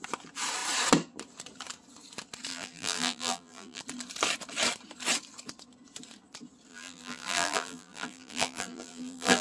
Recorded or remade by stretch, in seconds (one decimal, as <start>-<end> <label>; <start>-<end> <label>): 0.0-2.5 recorded; 2.5-3.8 remade; 3.8-6.7 recorded; 6.7-9.4 remade

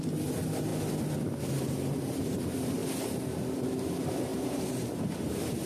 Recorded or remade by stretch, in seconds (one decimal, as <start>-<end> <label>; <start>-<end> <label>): 0.0-0.7 remade; 0.7-1.4 recorded; 1.4-2.8 remade; 2.8-3.5 recorded; 3.5-5.7 remade

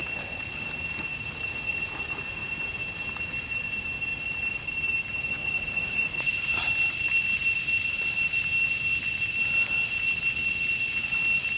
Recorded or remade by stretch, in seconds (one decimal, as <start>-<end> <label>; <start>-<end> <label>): 0.0-5.4 recorded; 5.4-6.7 remade; 6.7-11.6 recorded

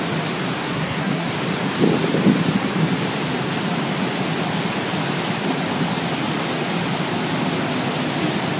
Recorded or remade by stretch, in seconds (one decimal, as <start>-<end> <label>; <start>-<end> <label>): 0.0-0.6 recorded; 0.6-1.3 remade; 1.3-8.6 recorded

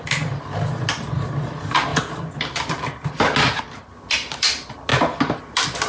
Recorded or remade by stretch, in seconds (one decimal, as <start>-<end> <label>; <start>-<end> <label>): 0.0-5.9 recorded

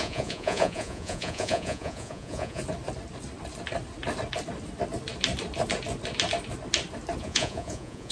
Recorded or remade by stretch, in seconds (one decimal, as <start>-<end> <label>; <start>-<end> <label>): 0.0-2.6 remade; 2.6-7.2 recorded; 7.2-8.1 remade

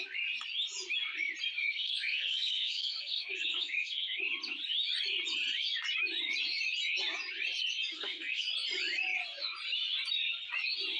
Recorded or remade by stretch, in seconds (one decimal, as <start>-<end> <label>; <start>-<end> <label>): 0.0-1.6 recorded; 1.6-4.2 remade; 4.2-7.9 recorded; 7.9-8.5 remade; 8.5-11.0 recorded